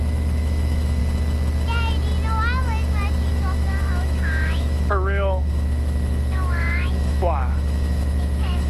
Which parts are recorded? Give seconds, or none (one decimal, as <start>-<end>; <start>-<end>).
1.0-3.3